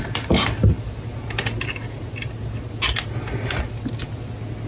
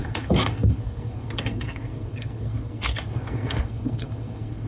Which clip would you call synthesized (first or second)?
second